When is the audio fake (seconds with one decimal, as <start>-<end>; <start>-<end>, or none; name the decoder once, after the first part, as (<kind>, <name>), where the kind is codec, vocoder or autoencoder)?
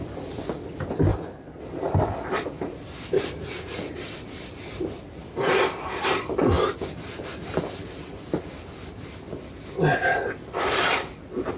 none